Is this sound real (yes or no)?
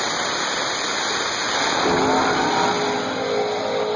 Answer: yes